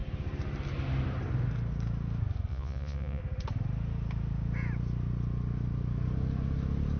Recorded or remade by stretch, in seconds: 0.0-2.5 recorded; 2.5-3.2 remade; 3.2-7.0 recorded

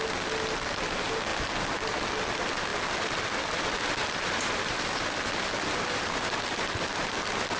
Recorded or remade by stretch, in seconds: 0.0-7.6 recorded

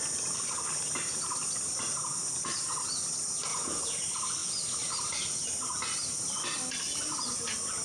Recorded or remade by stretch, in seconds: 0.0-3.5 recorded; 3.5-4.0 remade; 4.0-7.8 recorded